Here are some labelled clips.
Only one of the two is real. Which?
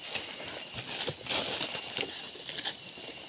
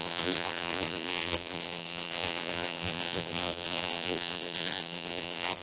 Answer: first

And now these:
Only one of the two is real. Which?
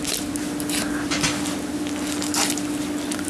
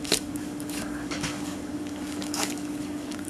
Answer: first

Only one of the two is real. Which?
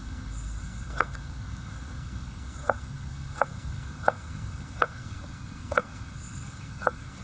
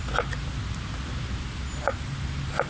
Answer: second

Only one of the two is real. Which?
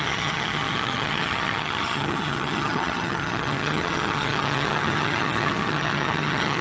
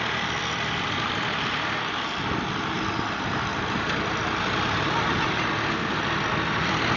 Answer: second